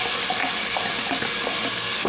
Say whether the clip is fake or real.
real